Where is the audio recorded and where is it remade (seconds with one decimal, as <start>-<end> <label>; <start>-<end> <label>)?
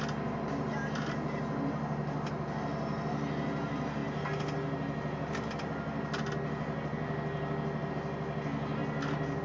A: 0.0-9.4 recorded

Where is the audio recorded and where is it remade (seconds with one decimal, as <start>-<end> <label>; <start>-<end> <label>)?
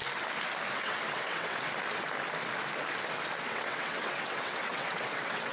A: 0.0-0.7 recorded; 0.7-1.7 remade; 1.7-3.5 recorded; 3.5-5.5 remade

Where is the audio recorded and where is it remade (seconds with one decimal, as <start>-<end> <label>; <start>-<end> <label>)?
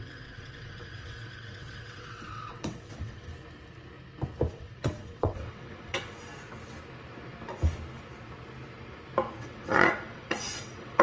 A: 0.0-3.3 remade; 3.3-4.5 recorded; 4.5-6.3 remade; 6.3-9.4 recorded; 9.4-11.0 remade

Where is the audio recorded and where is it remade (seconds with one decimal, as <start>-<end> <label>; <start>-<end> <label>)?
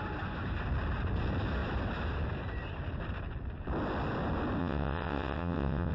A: 0.0-4.6 recorded; 4.6-5.9 remade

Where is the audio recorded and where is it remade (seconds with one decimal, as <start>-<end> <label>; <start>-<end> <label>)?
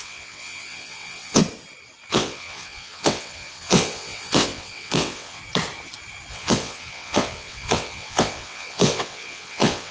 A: 0.0-1.4 remade; 1.4-2.1 recorded; 2.1-5.4 remade; 5.4-6.3 recorded; 6.3-9.9 remade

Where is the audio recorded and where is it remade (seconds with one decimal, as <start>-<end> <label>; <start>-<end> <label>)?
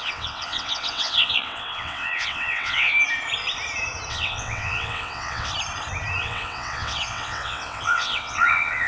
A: 0.0-2.9 remade; 2.9-4.1 recorded; 4.1-5.5 remade; 5.5-6.2 recorded; 6.2-8.9 remade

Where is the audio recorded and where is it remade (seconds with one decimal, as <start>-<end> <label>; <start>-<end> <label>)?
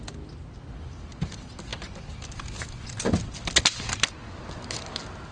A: 0.0-5.3 recorded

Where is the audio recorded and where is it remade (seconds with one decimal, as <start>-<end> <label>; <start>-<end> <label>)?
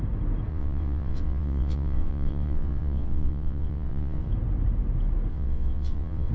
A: 0.0-0.5 recorded; 0.5-4.3 remade; 4.3-5.3 recorded; 5.3-6.3 remade